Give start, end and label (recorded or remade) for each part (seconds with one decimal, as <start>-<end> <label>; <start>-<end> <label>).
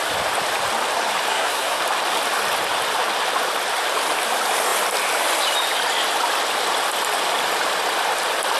0.0-1.3 recorded; 1.3-1.8 remade; 1.8-8.6 recorded